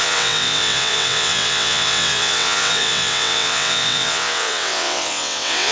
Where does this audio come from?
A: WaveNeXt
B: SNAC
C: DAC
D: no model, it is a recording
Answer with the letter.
A